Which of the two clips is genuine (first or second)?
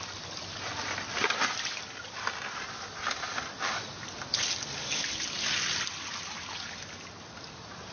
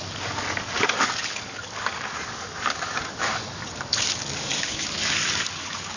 first